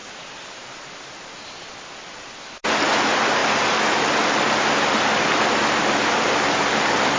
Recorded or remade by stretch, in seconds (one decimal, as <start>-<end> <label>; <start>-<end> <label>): 0.0-7.2 recorded